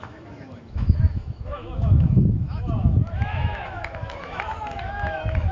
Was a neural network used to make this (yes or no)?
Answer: yes